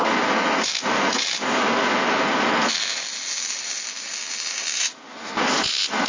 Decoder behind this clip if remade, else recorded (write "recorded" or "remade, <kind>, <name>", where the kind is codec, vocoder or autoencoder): recorded